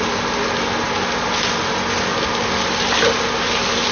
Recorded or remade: recorded